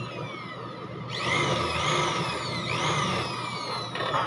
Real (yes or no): yes